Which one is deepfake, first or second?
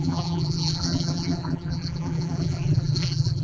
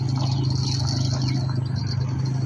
first